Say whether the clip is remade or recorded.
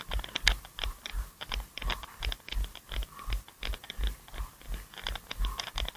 recorded